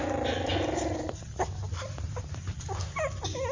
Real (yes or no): yes